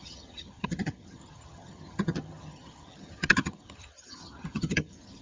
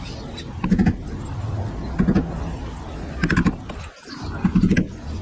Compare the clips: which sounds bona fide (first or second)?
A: second